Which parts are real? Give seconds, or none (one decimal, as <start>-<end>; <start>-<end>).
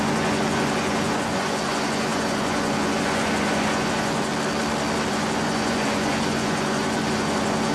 4.3-5.1